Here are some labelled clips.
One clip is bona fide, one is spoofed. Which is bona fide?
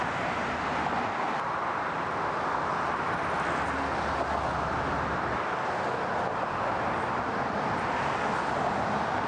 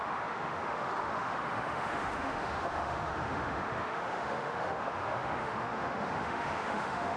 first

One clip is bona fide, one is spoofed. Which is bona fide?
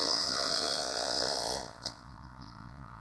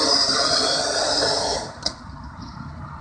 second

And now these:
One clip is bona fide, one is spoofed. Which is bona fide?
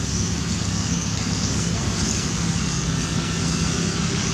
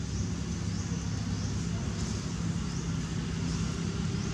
second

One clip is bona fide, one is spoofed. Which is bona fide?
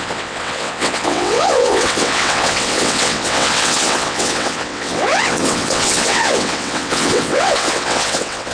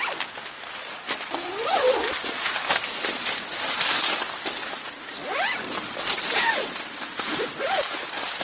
second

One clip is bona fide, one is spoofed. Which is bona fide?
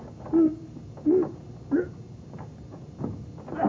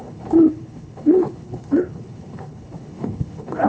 first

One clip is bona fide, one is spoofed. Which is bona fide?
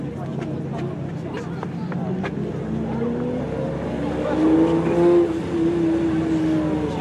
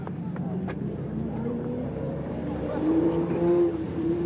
first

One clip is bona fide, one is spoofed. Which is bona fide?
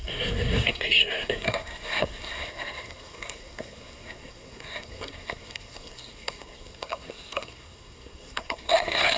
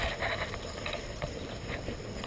second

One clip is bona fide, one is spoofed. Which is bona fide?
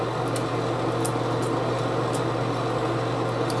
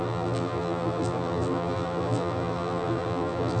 first